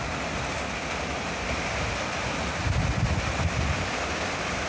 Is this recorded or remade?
recorded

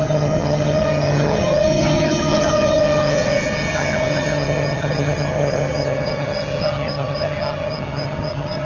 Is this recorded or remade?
remade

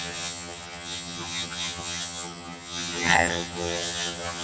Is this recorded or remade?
remade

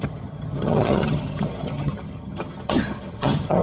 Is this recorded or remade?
remade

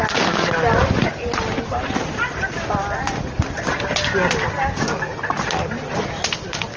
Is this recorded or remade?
recorded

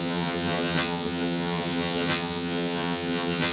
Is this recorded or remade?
remade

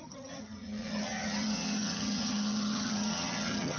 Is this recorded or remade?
remade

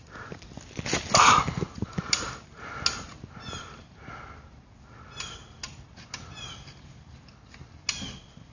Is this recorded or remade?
recorded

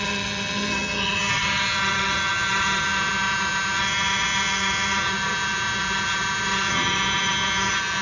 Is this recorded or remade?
remade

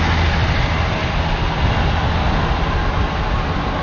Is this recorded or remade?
recorded